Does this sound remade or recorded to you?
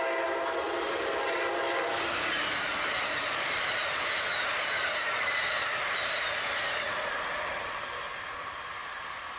recorded